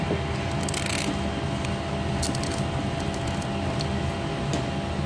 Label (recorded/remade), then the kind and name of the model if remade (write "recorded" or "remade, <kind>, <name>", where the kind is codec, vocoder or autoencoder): recorded